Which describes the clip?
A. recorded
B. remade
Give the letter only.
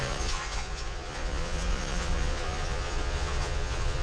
B